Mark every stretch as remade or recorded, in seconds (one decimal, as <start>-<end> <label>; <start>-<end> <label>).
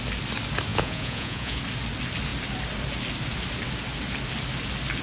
0.0-0.7 recorded; 0.7-1.6 remade; 1.6-5.0 recorded